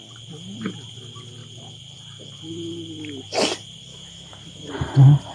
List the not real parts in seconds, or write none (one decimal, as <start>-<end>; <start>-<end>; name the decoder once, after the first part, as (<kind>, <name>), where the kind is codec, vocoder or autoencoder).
3.9-4.7 (autoencoder, DAC-VAE)